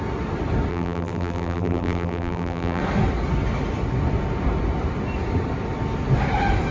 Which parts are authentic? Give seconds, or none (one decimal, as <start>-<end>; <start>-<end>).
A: 0.0-0.7; 2.8-6.7